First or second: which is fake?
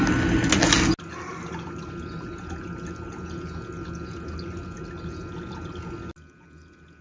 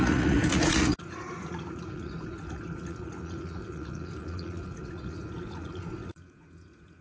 second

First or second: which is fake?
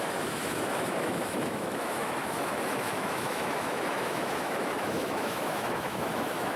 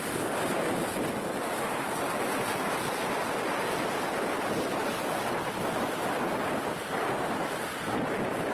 first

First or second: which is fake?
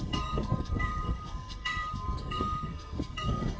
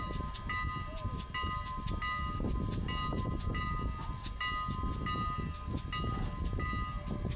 first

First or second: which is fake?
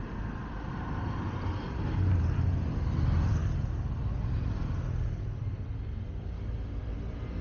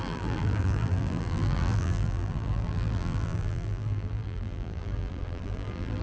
second